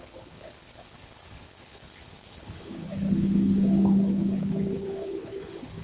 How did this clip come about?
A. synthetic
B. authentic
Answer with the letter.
A